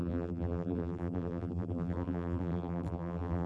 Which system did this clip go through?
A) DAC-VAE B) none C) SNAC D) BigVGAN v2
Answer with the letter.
D